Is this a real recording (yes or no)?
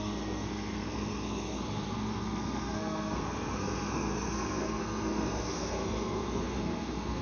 no